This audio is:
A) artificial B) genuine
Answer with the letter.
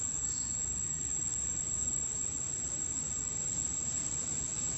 B